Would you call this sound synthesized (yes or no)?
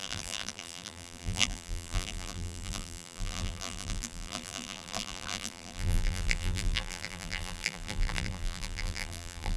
yes